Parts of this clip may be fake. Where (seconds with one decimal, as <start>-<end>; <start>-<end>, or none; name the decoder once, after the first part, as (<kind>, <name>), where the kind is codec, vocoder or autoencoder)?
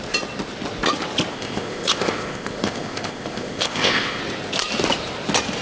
1.3-4.2 (codec, ZipCodec)